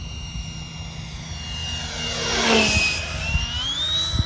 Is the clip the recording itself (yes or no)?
yes